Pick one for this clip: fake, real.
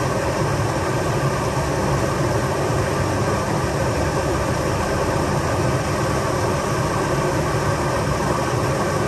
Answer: real